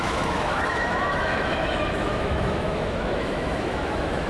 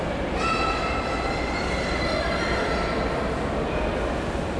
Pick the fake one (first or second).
first